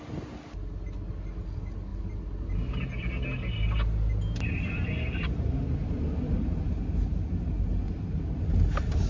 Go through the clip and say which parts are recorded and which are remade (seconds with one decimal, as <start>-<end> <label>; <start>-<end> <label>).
0.0-9.1 recorded